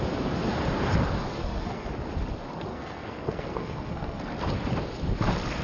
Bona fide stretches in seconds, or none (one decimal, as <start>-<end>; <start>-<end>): 0.0-1.3; 1.9-2.7; 4.2-5.6